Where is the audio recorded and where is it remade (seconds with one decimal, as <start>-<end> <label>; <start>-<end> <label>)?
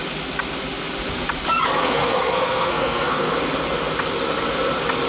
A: 0.0-1.8 recorded; 1.8-3.3 remade; 3.3-5.1 recorded